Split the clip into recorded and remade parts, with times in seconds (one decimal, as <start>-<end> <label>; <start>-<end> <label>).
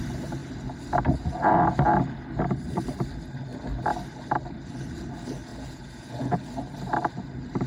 0.0-5.5 recorded; 5.5-6.5 remade; 6.5-7.7 recorded